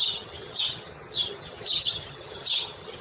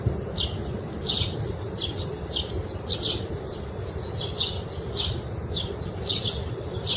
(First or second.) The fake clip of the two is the first